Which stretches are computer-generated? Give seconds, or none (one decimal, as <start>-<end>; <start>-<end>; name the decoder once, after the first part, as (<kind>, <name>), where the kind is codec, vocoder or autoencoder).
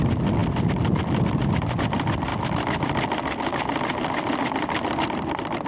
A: 0.0-0.4 (vocoder, BigVGAN v2); 1.2-2.3; 5.3-5.7